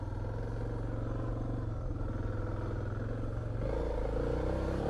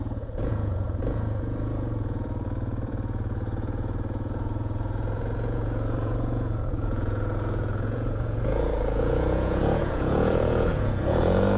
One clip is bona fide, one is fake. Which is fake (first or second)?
second